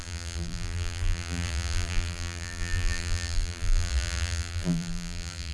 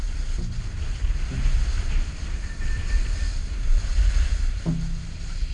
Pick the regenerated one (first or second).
first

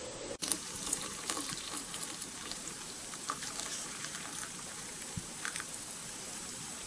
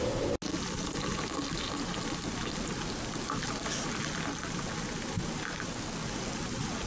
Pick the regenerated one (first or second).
first